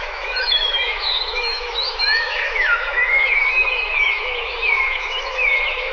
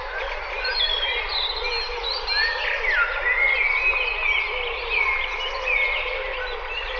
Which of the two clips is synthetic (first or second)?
first